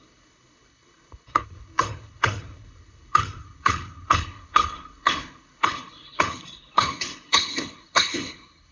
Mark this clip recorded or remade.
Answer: remade